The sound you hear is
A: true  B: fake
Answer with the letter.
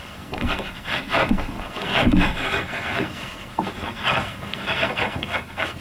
B